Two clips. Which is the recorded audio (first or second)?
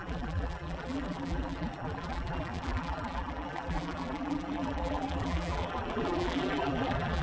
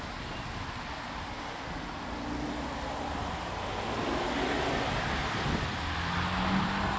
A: second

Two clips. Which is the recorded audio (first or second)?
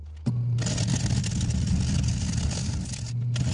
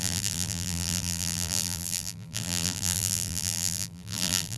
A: first